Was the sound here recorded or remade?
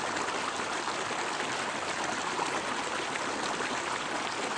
recorded